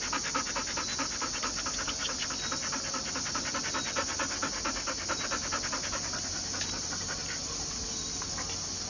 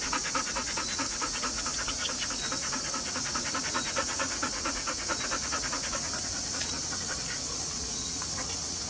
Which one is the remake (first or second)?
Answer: second